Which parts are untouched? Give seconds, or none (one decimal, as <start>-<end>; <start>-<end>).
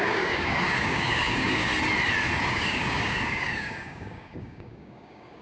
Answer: 1.7-2.5